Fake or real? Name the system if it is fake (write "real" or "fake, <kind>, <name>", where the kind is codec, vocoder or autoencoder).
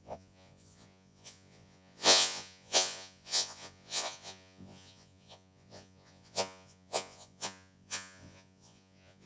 fake, vocoder, Vocos